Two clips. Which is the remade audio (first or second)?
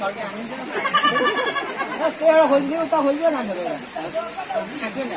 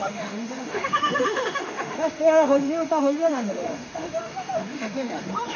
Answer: second